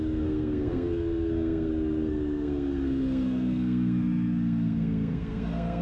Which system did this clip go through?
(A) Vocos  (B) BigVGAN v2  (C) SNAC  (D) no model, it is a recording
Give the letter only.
C